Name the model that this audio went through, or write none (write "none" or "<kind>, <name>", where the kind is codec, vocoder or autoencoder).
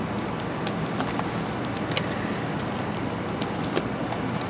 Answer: none